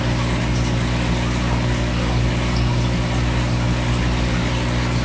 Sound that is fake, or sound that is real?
real